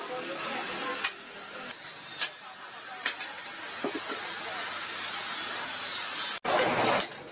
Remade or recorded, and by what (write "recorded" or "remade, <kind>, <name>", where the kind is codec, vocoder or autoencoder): recorded